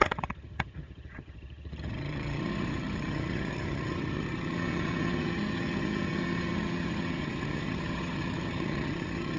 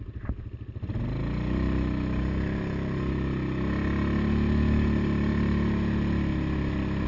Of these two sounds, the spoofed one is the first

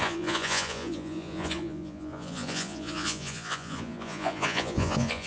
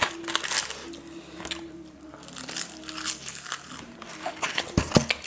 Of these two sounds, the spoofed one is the first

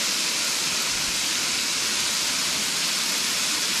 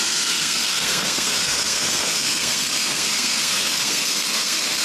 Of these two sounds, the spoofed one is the second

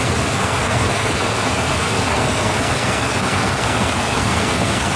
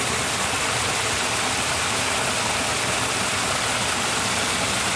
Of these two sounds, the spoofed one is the first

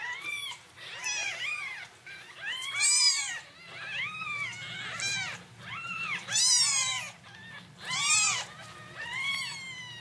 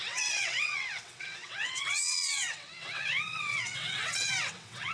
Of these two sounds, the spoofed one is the second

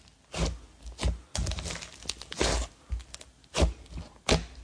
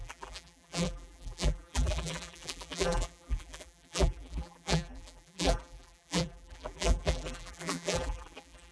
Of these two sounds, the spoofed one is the second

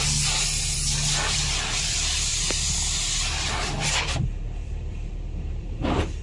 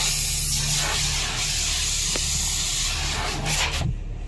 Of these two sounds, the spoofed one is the first